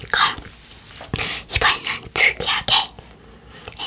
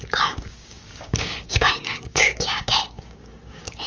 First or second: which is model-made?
second